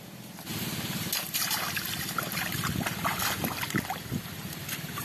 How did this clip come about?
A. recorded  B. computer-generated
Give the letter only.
A